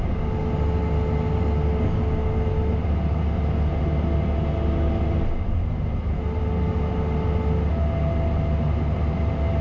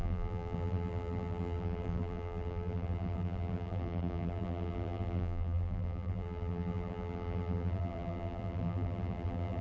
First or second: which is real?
first